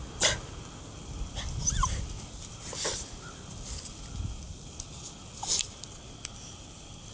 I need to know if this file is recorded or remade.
recorded